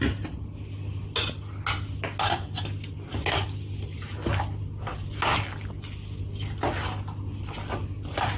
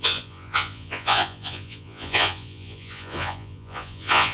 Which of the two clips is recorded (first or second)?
first